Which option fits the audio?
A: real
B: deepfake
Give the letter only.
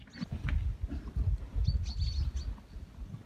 A